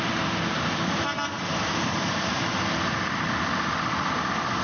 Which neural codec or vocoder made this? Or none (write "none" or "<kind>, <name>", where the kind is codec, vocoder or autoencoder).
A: none